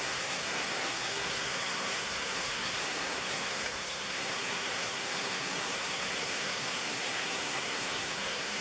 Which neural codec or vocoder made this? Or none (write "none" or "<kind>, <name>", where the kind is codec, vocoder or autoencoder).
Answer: codec, SNAC